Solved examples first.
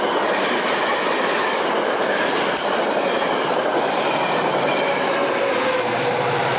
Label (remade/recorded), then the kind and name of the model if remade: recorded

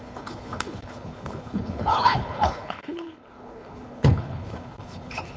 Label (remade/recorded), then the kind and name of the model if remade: remade, codec, HILCodec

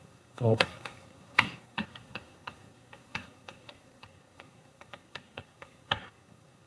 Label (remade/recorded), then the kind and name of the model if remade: remade, codec, SNAC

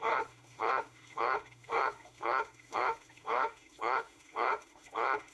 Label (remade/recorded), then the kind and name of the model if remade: remade, autoencoder, DAC-VAE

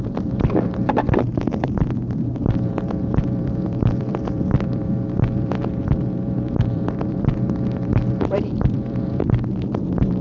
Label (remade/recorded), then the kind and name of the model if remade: remade, vocoder, BigVGAN v2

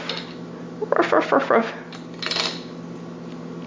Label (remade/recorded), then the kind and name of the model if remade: recorded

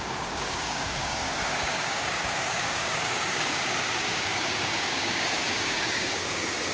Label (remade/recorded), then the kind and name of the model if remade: remade, codec, DAC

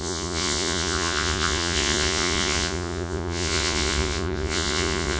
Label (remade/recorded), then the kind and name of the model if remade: remade, vocoder, Vocos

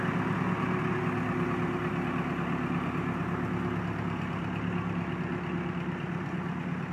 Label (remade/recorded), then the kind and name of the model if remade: recorded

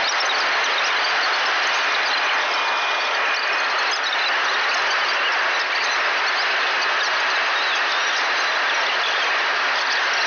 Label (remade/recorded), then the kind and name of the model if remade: recorded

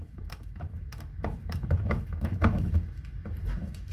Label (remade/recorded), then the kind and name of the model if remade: remade, autoencoder, DAC-VAE